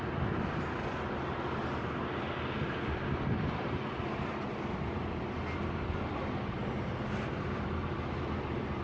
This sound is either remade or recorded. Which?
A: recorded